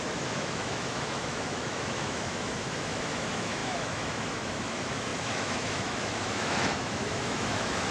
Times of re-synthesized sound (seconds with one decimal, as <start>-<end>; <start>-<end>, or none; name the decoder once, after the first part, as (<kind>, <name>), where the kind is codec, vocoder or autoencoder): 0.0-7.9 (autoencoder, DAC-VAE)